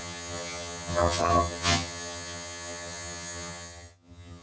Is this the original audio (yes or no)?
no